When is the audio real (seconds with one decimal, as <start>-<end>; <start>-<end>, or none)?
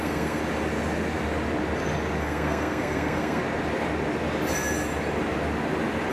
0.4-2.2; 3.4-6.1